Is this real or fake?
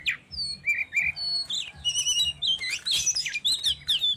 real